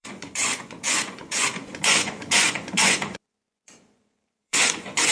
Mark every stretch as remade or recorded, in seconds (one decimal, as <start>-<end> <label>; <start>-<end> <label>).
0.0-5.1 remade